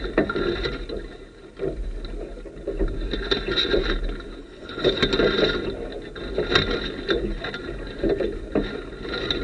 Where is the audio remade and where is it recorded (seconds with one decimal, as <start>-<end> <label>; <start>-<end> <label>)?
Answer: 0.0-4.4 recorded; 4.4-5.0 remade; 5.0-9.4 recorded